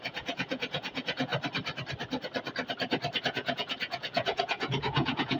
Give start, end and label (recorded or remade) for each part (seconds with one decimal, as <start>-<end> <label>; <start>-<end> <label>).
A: 0.0-1.3 remade; 1.3-3.2 recorded; 3.2-5.4 remade